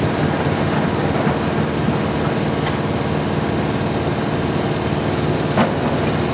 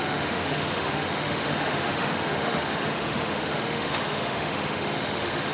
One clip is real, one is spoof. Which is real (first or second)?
first